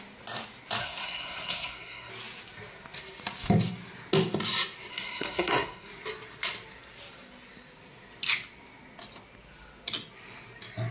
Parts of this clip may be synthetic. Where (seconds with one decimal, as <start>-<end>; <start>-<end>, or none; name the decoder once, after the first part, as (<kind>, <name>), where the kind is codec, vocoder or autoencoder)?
0.8-2.1 (codec, SNAC); 4.9-5.9